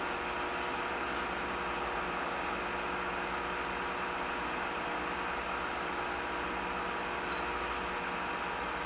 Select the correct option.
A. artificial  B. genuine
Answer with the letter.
B